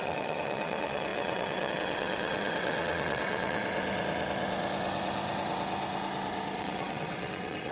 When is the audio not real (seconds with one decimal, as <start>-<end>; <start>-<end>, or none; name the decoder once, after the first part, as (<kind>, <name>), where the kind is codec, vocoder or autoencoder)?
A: 0.0-3.6 (vocoder, WaveNeXt); 6.6-7.7